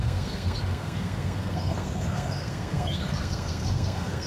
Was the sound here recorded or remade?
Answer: remade